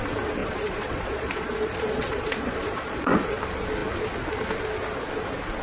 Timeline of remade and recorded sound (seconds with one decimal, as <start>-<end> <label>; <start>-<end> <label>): 0.0-0.4 recorded; 0.4-3.4 remade; 3.4-5.6 recorded